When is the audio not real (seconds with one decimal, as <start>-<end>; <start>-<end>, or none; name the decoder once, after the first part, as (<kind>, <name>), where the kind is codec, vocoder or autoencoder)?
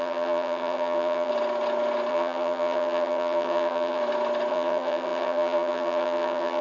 0.0-1.3 (vocoder, HiFi-GAN); 2.1-4.0; 4.5-6.6